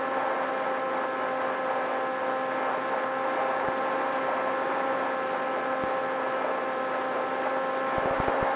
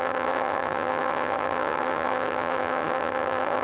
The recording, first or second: first